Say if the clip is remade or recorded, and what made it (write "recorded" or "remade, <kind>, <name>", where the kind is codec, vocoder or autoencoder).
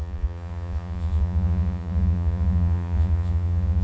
remade, vocoder, Vocos